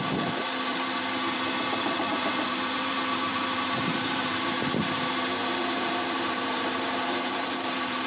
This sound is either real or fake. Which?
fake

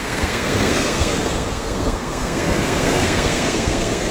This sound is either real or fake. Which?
fake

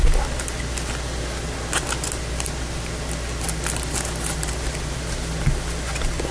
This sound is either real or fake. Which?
real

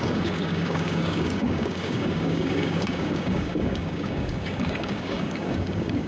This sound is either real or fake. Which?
fake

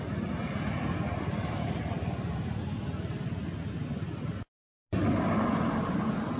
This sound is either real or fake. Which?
real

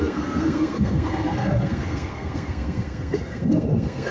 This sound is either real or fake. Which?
fake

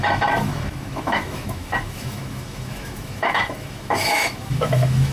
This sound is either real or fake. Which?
fake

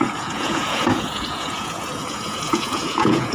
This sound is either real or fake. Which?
fake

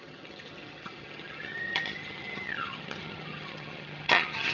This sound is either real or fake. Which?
fake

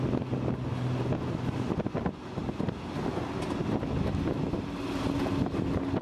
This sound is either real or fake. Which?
real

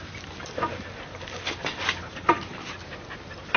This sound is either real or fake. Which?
fake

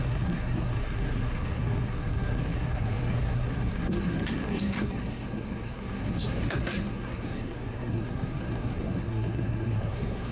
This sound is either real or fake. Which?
fake